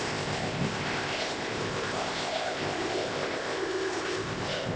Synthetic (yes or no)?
yes